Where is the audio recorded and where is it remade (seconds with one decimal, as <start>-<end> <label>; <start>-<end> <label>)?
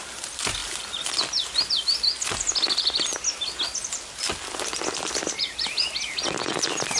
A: 0.0-7.0 recorded